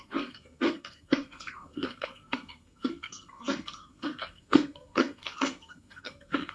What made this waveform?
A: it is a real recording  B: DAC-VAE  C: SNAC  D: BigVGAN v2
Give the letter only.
C